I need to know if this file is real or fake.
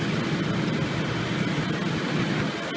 real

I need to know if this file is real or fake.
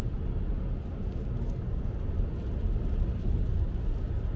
real